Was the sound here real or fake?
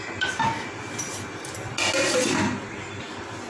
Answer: real